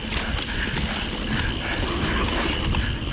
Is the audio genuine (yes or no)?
yes